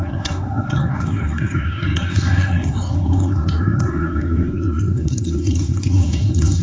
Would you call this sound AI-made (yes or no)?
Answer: yes